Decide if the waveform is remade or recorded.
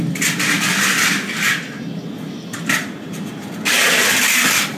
recorded